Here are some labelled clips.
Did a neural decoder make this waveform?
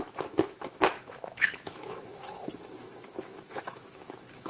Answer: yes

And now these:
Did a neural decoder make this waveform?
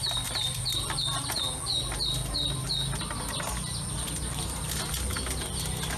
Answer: no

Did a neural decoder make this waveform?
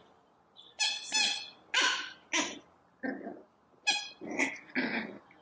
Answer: no